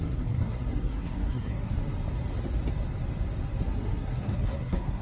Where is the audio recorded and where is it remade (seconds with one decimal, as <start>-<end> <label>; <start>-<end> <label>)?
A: 0.0-1.8 remade; 1.8-3.6 recorded; 3.6-5.0 remade